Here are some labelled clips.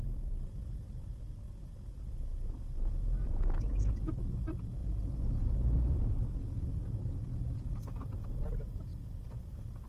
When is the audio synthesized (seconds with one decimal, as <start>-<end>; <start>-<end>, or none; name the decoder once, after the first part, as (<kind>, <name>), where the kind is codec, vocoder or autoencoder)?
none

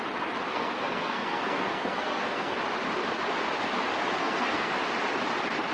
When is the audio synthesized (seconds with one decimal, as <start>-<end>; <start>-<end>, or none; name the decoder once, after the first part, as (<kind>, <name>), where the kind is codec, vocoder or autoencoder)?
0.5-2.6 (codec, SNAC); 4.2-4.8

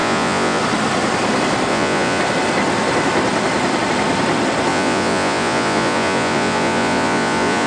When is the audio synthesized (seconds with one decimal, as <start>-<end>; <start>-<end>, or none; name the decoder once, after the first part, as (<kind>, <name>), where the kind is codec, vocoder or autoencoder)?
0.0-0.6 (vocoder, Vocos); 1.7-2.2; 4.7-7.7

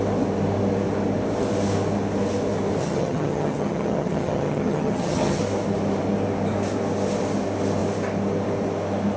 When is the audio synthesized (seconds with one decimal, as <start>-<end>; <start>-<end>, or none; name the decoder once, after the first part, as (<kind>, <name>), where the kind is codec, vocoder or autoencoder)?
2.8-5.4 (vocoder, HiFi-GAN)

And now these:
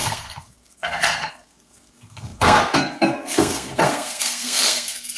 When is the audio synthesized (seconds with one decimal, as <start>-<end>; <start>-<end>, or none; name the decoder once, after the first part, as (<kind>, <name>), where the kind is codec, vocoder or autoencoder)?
0.0-5.2 (codec, SNAC)

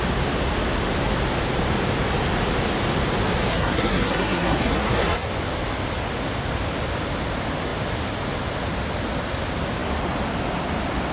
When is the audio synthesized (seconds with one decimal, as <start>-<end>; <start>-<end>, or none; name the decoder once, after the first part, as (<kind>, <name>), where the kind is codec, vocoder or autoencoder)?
3.5-5.3 (codec, SNAC)

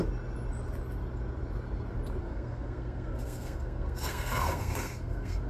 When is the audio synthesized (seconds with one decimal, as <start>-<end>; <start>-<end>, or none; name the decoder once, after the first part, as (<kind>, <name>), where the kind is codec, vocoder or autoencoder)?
2.2-5.5 (codec, SNAC)

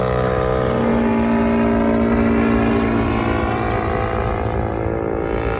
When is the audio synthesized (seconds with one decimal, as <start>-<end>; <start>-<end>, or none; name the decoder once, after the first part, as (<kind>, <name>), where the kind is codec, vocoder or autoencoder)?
none